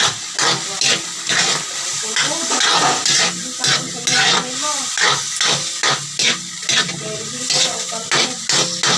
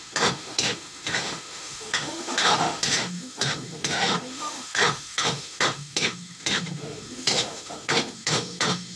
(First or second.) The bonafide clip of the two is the first